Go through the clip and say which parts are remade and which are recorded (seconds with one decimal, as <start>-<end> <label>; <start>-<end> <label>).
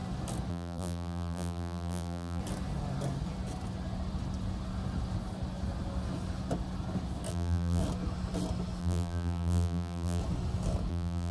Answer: 0.0-0.5 recorded; 0.5-2.4 remade; 2.4-7.3 recorded; 7.3-7.8 remade; 7.8-8.8 recorded; 8.8-10.2 remade; 10.2-10.9 recorded; 10.9-11.3 remade